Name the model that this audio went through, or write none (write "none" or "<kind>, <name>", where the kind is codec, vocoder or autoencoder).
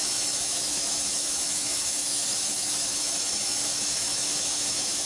autoencoder, DAC-VAE